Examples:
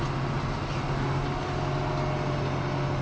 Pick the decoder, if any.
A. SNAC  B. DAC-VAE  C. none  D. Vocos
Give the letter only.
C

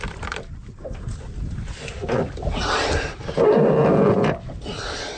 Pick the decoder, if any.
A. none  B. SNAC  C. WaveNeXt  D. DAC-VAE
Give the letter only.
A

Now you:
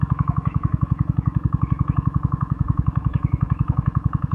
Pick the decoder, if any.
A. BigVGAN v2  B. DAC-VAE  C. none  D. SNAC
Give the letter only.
B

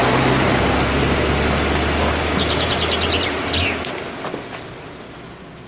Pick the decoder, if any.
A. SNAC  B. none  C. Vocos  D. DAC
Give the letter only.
B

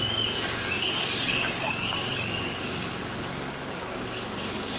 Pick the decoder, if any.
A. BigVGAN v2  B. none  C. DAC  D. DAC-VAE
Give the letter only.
C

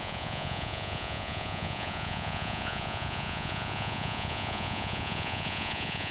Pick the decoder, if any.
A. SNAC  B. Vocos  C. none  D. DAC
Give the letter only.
B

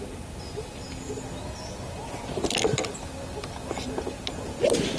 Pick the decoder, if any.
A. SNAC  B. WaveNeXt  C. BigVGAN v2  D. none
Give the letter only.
D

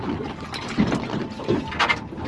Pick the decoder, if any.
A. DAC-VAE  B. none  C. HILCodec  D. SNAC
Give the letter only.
B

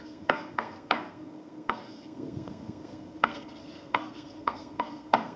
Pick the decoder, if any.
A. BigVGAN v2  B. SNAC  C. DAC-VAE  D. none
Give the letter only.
B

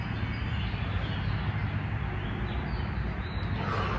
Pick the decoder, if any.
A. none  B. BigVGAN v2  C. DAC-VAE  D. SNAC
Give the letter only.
A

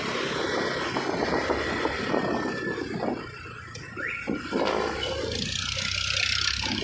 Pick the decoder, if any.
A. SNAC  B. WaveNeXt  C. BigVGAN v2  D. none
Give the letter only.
D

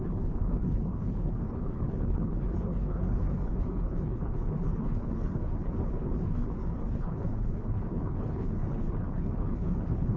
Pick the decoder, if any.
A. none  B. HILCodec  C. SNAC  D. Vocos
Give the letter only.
B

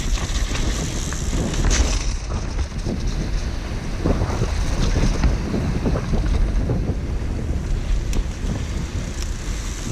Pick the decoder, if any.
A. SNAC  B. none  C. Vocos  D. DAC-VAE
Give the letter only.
B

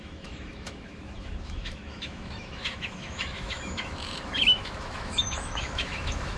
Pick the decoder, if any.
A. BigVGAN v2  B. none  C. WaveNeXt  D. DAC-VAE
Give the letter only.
D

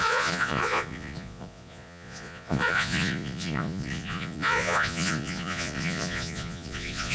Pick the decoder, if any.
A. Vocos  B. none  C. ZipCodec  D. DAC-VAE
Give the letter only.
A